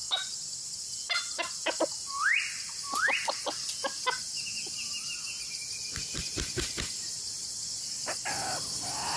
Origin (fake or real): real